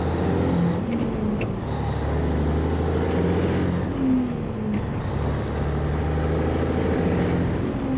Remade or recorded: recorded